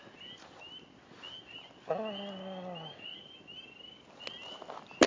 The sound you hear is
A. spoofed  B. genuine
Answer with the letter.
B